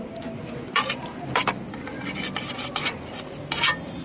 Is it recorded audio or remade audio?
recorded